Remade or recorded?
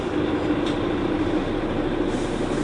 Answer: recorded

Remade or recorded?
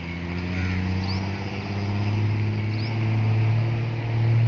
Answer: recorded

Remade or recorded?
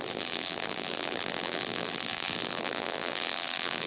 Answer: remade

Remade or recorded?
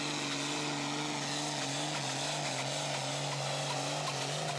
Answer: recorded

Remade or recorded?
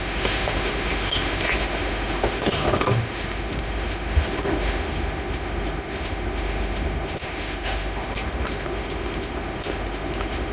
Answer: remade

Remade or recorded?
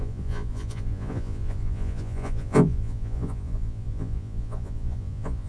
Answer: remade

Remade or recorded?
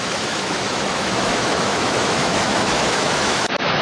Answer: remade